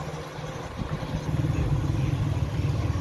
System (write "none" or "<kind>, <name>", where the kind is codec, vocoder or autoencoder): none